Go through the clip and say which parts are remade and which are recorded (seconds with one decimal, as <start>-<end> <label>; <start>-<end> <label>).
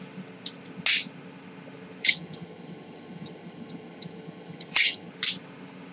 0.0-2.0 recorded; 2.0-5.1 remade; 5.1-5.9 recorded